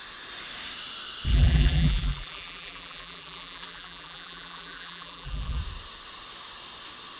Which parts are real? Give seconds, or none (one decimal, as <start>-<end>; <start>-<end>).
0.0-1.3; 5.6-7.2